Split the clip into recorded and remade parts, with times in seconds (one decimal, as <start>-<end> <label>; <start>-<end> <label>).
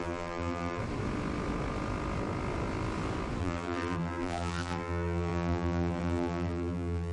0.0-0.8 remade; 0.8-3.4 recorded; 3.4-7.1 remade